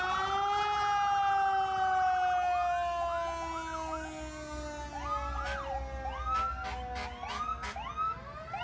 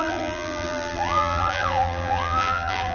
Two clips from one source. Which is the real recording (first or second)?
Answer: first